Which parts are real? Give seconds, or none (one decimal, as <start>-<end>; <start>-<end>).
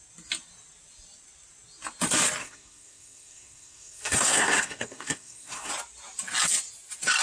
0.0-2.4; 5.7-7.2